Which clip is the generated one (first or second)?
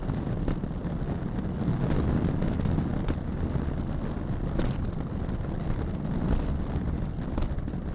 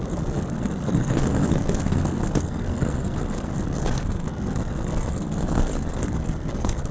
second